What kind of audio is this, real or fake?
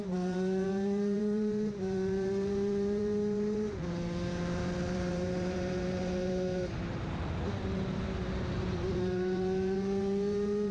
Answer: fake